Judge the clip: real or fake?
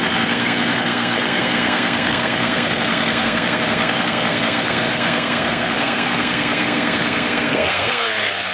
fake